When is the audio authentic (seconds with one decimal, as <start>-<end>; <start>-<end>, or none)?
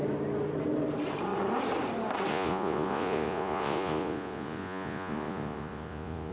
0.0-2.3